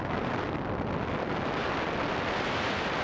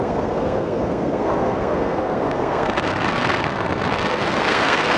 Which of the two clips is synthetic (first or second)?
second